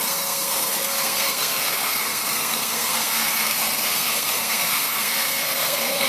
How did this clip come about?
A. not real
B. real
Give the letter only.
A